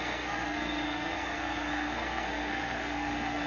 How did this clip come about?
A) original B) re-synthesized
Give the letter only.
B